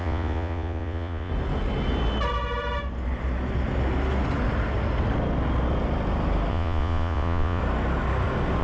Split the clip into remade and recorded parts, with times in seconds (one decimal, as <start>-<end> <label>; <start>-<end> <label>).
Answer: 0.0-1.3 remade; 1.3-6.5 recorded; 6.5-7.6 remade; 7.6-8.6 recorded